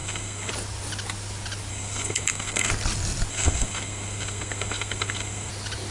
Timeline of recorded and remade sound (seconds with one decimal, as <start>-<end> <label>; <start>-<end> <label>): 0.0-0.5 remade; 0.5-1.7 recorded; 1.7-2.7 remade; 2.7-3.3 recorded; 3.3-5.5 remade; 5.5-5.9 recorded